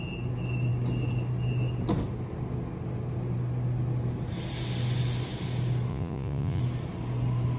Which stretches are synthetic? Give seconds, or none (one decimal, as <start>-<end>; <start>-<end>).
5.9-6.6

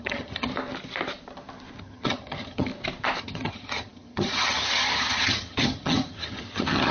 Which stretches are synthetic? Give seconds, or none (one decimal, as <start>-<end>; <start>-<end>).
0.0-0.5; 1.8-2.7; 3.2-6.9

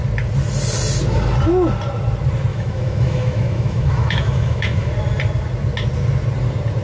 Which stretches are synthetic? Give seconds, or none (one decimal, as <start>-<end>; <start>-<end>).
2.5-4.9

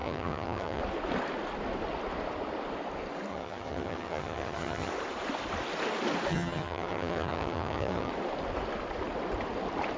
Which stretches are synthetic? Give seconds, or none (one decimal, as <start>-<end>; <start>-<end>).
0.0-0.8; 3.3-4.9; 6.3-8.1

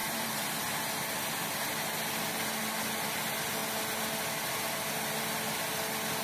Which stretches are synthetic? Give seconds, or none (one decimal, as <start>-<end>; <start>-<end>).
0.0-0.7

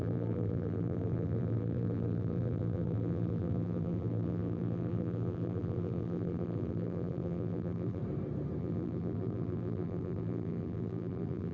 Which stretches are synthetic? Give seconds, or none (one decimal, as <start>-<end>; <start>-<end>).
0.0-8.0; 8.6-11.5

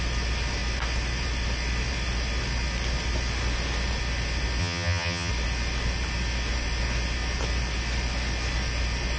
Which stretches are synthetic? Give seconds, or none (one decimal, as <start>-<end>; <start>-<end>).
4.6-5.3